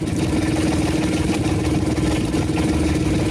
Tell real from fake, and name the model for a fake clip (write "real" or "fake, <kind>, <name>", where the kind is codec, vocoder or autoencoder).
real